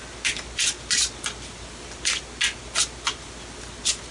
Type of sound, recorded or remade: recorded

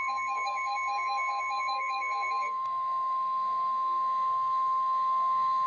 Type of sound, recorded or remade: remade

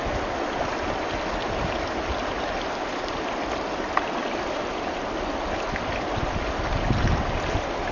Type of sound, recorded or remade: recorded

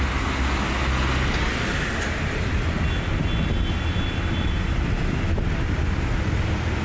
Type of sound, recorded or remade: recorded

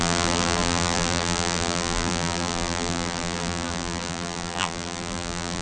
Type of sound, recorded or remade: remade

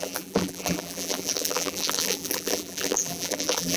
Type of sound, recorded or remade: remade